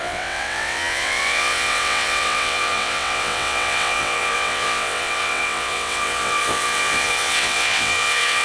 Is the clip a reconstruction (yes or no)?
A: yes